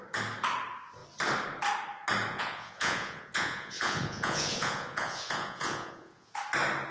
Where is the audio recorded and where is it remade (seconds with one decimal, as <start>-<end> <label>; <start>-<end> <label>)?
0.0-2.3 recorded; 2.3-6.4 remade; 6.4-6.9 recorded